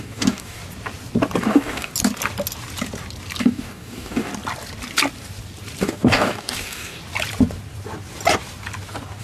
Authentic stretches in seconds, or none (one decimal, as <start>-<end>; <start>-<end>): 0.6-1.4; 1.9-3.4; 4.3-5.8; 7.0-9.2